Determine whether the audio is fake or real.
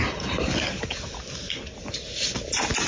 real